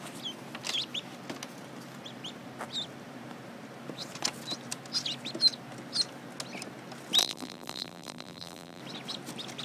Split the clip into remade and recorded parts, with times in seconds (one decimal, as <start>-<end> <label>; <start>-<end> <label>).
0.0-7.2 recorded; 7.2-8.8 remade; 8.8-9.6 recorded